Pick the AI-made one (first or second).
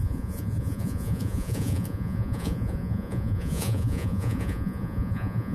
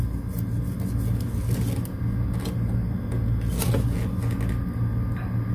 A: first